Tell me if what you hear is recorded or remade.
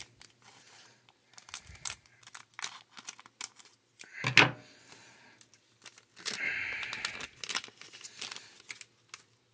recorded